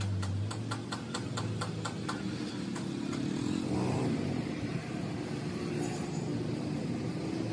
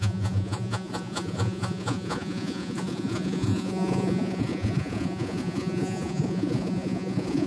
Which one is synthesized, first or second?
second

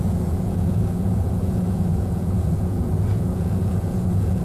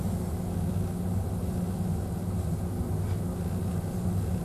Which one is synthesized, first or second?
first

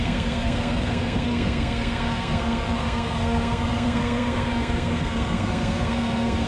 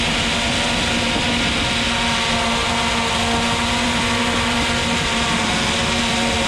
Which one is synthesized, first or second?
first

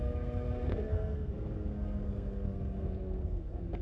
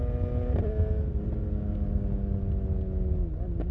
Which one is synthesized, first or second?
first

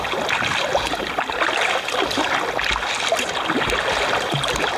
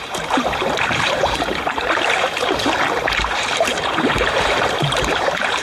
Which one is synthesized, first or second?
second